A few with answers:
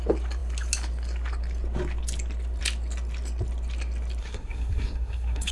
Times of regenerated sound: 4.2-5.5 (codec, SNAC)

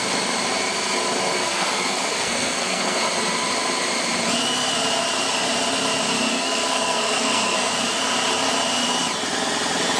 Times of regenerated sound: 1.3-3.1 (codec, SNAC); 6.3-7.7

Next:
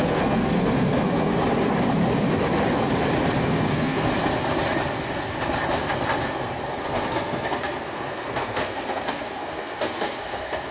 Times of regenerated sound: 0.0-1.3 (codec, SNAC); 3.4-4.1; 6.3-10.7